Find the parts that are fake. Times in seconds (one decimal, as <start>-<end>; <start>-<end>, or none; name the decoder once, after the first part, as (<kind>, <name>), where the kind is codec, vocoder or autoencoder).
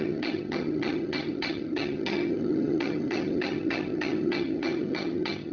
0.0-5.5 (vocoder, HiFi-GAN)